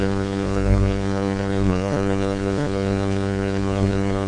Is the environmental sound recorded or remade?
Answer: remade